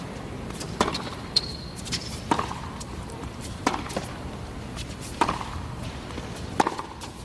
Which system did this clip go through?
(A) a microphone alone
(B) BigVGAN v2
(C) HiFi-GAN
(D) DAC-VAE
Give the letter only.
B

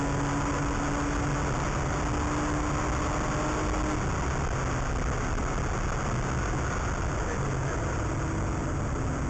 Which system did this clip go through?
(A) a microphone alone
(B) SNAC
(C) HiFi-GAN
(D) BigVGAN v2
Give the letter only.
A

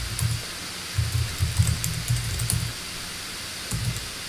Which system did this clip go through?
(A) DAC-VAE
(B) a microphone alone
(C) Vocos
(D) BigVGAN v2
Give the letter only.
B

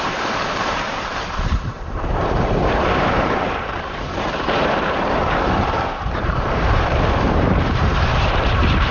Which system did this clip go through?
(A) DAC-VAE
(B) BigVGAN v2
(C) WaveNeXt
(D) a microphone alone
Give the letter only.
B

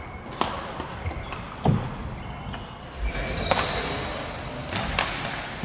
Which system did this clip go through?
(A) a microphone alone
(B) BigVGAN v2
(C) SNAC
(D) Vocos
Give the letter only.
A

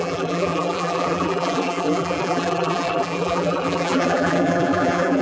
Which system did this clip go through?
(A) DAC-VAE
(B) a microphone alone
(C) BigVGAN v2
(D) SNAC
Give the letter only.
C